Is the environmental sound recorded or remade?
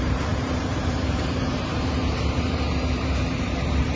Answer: remade